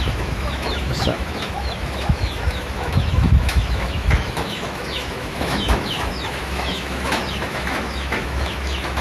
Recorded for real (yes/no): no